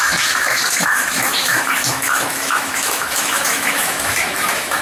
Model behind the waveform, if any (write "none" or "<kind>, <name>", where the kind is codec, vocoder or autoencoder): autoencoder, DAC-VAE